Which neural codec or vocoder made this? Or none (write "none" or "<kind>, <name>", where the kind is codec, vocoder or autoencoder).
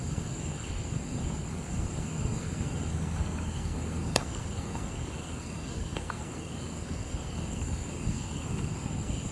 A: codec, SNAC